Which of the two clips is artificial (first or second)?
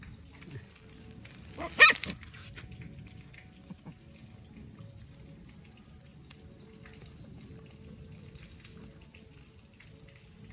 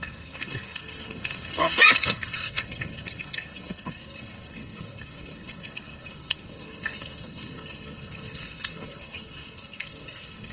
second